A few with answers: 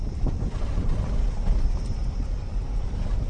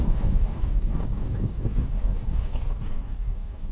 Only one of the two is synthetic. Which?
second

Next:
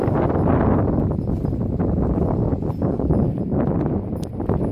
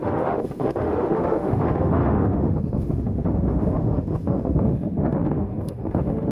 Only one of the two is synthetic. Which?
second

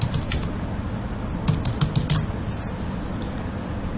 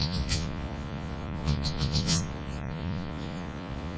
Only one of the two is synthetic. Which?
second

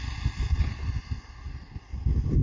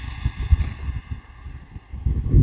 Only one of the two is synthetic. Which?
first